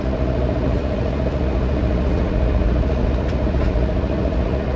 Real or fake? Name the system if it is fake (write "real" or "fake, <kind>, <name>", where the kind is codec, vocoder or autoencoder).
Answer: fake, vocoder, Vocos